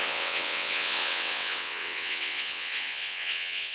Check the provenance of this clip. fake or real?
fake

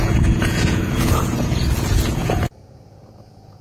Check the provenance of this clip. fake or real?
fake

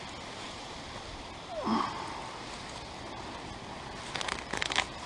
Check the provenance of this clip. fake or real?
real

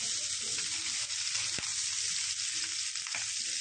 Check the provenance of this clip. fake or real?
real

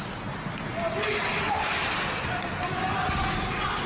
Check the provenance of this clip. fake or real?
real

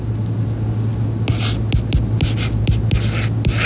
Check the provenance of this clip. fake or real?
real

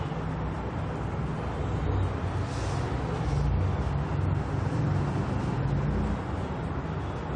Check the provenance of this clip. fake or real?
real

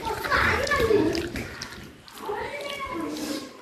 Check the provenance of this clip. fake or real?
real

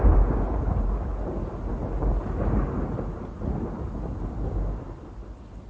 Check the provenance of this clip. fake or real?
real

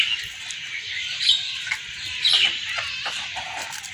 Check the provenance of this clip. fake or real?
real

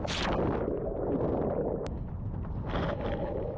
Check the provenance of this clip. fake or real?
real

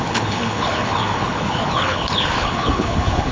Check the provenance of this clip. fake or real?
fake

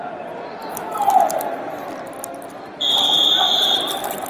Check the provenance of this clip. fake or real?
fake